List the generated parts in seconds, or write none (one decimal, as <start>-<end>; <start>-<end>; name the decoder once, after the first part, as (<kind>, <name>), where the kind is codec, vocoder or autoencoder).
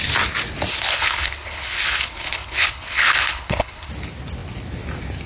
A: 0.7-3.9 (codec, HILCodec)